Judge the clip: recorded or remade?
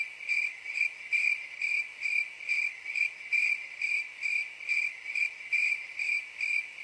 recorded